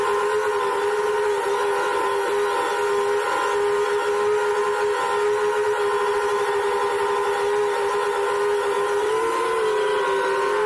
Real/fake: real